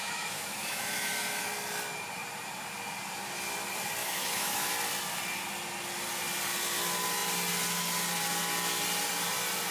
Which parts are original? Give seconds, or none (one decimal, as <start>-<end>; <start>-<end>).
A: 1.4-4.0; 4.7-9.7